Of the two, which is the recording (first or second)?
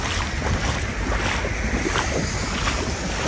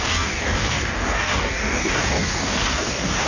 first